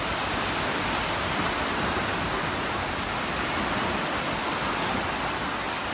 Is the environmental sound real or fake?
real